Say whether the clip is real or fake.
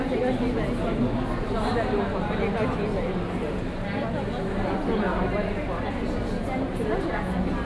real